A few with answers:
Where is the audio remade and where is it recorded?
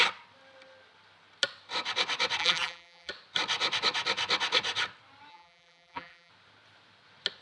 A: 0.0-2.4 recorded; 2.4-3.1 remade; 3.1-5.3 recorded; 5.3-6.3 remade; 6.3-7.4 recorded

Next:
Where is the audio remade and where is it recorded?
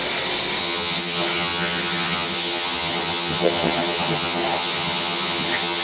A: 0.0-0.6 recorded; 0.6-5.8 remade